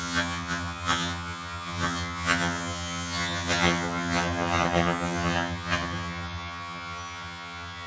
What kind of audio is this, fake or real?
fake